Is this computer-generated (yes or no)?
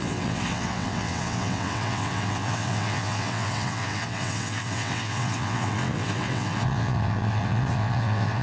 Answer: yes